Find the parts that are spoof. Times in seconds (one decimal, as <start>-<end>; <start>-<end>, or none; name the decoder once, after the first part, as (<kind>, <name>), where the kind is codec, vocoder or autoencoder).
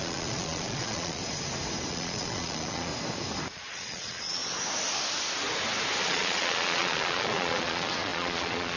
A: 0.0-1.2 (vocoder, Vocos); 1.9-2.9; 3.5-4.4; 6.0-8.8